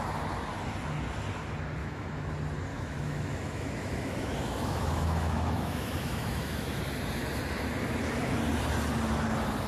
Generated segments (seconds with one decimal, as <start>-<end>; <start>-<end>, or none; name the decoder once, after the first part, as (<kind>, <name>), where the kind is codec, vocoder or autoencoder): 1.8-2.3 (autoencoder, DAC-VAE); 2.7-6.8